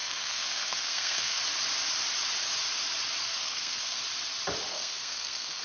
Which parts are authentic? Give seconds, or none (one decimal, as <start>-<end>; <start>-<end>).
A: 1.4-3.3; 4.0-4.7